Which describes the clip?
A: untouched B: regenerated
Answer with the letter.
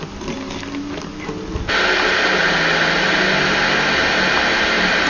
A